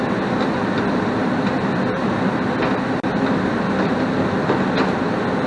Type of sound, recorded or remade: recorded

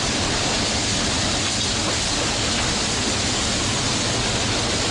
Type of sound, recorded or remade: recorded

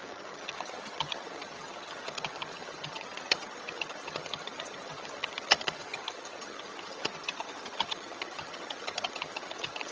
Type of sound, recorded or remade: remade